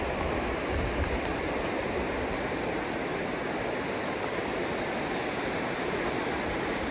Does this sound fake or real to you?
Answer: real